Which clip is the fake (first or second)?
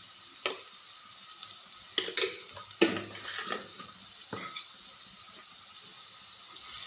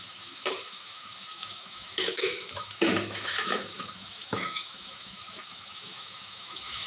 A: second